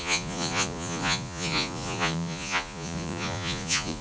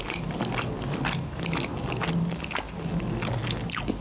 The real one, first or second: second